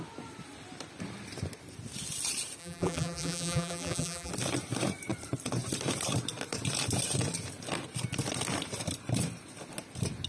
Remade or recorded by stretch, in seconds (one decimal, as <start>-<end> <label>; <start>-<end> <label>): 0.0-2.6 recorded; 2.6-4.3 remade; 4.3-10.3 recorded